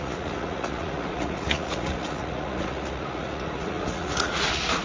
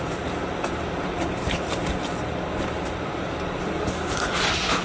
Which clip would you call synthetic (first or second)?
first